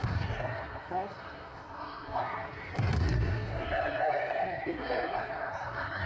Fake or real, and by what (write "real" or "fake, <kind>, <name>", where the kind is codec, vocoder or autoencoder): fake, codec, SNAC